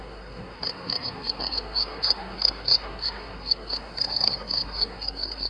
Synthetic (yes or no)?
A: yes